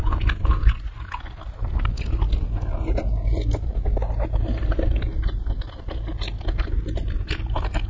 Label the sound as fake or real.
real